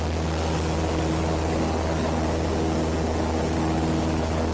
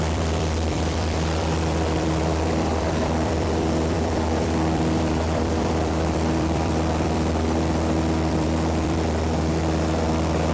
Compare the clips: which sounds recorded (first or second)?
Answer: first